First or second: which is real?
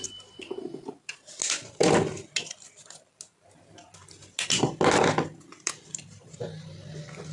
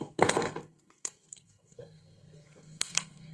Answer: first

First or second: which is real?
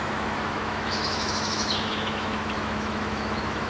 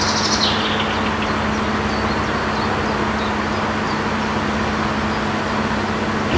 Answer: second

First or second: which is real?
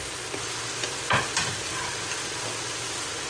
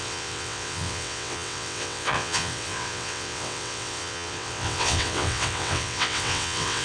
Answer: first